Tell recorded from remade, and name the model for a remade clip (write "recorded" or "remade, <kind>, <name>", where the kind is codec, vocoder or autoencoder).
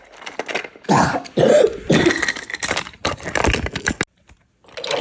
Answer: recorded